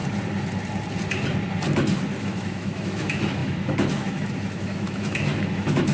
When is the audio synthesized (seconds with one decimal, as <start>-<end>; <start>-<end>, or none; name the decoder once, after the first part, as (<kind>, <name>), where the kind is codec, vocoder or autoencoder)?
2.2-5.9 (autoencoder, DAC-VAE)